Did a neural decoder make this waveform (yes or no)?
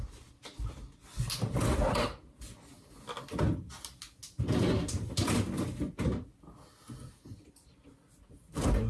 no